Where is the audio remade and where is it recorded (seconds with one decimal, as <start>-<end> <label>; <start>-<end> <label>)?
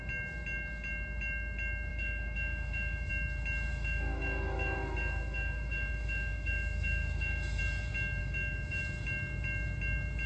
0.0-1.9 recorded; 1.9-3.1 remade; 3.1-3.7 recorded; 3.7-7.6 remade; 7.6-8.2 recorded; 8.2-8.8 remade; 8.8-10.3 recorded